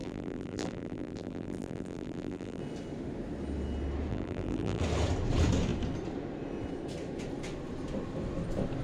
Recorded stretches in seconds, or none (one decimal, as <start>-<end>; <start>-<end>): 2.6-4.1; 4.8-8.8